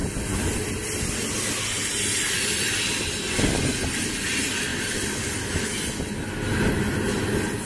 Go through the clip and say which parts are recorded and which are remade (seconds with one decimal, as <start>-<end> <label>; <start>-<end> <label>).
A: 0.0-4.7 recorded; 4.7-5.3 remade; 5.3-7.7 recorded